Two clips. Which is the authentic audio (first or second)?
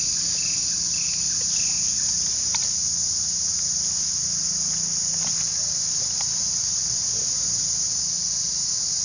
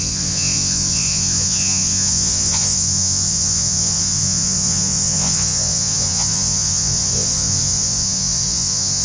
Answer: first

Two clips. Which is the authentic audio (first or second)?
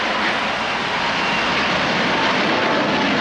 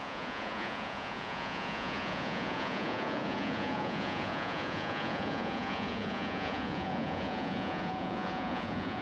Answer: first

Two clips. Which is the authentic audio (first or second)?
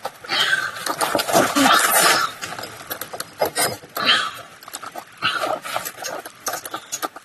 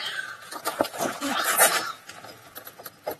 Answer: first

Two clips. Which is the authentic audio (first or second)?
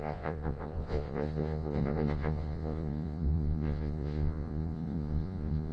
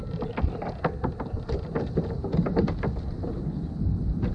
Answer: second